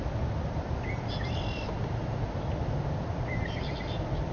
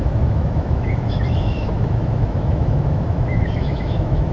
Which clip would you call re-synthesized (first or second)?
second